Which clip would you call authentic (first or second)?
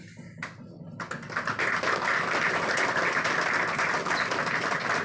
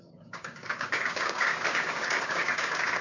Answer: first